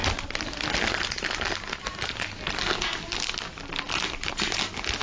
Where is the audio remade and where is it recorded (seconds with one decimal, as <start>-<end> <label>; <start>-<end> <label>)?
0.0-5.0 recorded